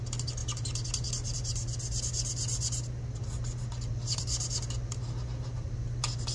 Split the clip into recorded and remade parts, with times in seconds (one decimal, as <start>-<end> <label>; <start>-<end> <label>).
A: 0.0-6.3 recorded